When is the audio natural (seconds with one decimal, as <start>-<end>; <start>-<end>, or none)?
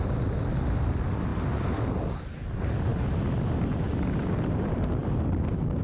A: 0.0-5.8